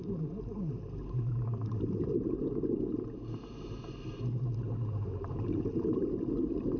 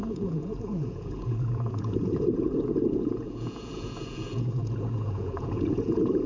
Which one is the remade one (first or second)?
second